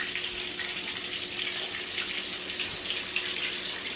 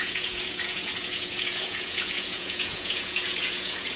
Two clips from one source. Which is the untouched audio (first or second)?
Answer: first